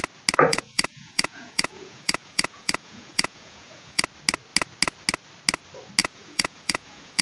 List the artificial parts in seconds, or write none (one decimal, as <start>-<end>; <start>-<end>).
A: 0.5-4.0; 6.0-7.2